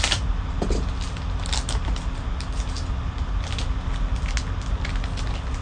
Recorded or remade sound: recorded